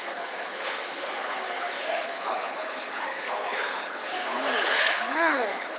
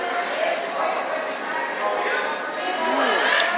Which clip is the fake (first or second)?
first